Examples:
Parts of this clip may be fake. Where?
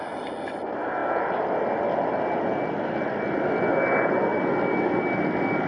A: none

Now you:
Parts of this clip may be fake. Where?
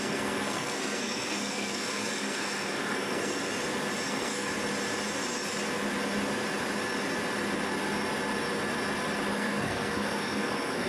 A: 0.0-3.4 (codec, SNAC); 4.1-4.5; 9.3-10.9